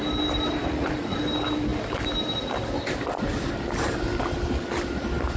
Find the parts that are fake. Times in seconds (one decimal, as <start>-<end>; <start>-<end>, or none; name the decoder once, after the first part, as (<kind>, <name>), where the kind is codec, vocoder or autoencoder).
0.6-1.2 (vocoder, Vocos)